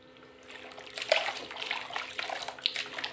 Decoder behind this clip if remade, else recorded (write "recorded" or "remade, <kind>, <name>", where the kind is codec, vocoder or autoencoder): recorded